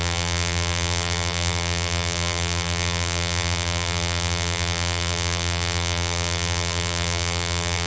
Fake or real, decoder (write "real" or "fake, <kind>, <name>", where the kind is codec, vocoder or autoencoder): fake, vocoder, BigVGAN v2